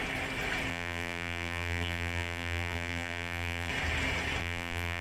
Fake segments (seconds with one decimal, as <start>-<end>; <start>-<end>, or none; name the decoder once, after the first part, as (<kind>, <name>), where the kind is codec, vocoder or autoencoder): 0.7-3.7 (vocoder, BigVGAN v2); 4.4-5.0